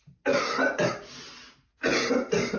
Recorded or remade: recorded